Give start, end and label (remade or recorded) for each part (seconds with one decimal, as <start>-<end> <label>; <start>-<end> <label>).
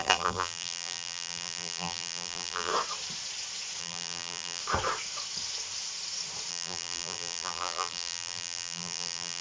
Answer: 0.0-2.7 remade; 2.7-3.8 recorded; 3.8-4.6 remade; 4.6-6.5 recorded; 6.5-9.4 remade